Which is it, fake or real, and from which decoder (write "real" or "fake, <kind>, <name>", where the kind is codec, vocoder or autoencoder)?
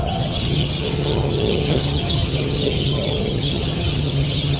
fake, vocoder, HiFi-GAN